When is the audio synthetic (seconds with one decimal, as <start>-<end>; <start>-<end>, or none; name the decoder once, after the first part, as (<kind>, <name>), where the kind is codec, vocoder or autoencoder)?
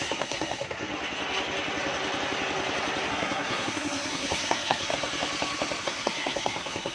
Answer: 0.0-0.9 (codec, SNAC); 3.1-4.9; 5.8-6.9